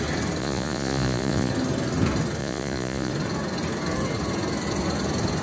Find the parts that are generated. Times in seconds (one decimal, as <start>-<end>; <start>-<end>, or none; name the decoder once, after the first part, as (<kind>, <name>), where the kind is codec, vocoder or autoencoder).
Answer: 0.4-1.5 (vocoder, Vocos); 2.4-3.1